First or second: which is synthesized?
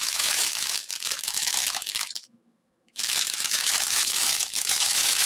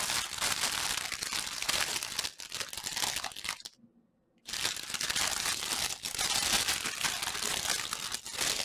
first